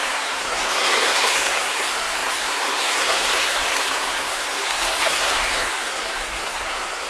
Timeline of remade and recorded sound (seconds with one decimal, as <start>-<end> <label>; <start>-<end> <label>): 0.0-7.1 remade